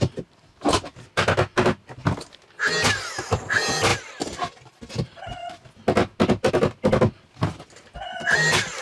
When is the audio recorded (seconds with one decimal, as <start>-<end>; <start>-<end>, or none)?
0.0-8.8